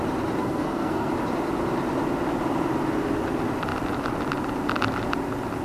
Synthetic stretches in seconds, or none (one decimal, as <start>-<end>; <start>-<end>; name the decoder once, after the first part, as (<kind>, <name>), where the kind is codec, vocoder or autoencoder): 0.4-1.1 (codec, SNAC)

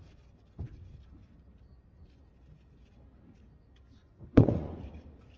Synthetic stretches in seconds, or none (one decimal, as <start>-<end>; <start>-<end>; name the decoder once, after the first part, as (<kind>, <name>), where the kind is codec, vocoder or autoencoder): 4.0-4.8 (vocoder, Vocos)

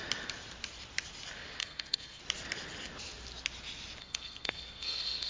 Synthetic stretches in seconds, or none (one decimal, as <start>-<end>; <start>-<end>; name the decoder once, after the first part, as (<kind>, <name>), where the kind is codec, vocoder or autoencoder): 1.6-2.2 (codec, SNAC); 4.0-5.3

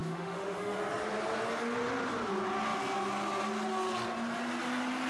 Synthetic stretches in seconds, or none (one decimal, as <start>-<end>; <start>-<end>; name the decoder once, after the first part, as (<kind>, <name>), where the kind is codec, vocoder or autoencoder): 0.0-0.8 (autoencoder, DAC-VAE)